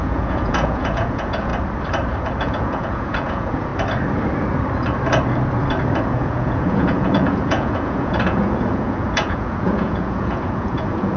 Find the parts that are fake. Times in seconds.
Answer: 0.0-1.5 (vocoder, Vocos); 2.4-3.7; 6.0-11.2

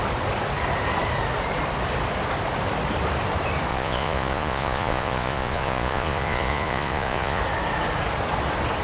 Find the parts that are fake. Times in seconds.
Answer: 3.7-7.4 (vocoder, Vocos)

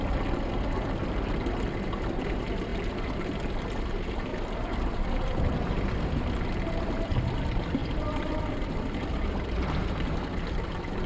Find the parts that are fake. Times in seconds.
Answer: 4.3-4.9 (vocoder, BigVGAN v2); 7.8-8.4

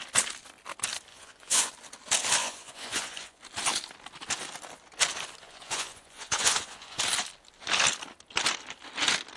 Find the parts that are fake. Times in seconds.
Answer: 1.1-1.7 (vocoder, Vocos); 2.4-3.4; 5.4-7.0

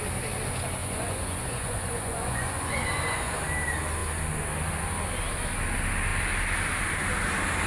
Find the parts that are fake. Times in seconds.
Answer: 0.8-3.4 (vocoder, Vocos)